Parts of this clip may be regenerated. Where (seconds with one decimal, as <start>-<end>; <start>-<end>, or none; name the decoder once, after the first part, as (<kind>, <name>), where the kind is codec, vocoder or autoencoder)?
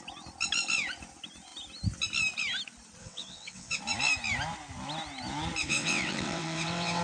3.0-3.8 (vocoder, WaveNeXt); 5.6-7.0